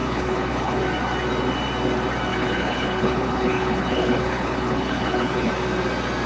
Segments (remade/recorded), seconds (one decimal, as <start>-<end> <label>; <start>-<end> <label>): 0.0-0.8 remade; 0.8-2.3 recorded; 2.3-5.5 remade; 5.5-6.3 recorded

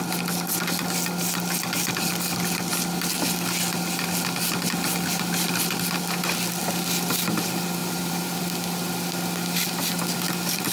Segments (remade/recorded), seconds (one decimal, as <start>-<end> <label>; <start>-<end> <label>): 0.0-7.8 recorded; 7.8-8.4 remade; 8.4-10.7 recorded

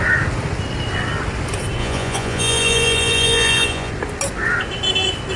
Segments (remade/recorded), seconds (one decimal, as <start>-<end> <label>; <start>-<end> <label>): 0.0-1.8 recorded; 1.8-3.9 remade; 3.9-5.4 recorded